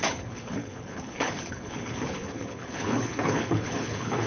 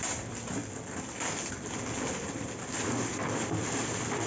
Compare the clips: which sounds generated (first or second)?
first